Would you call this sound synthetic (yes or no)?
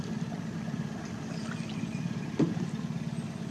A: no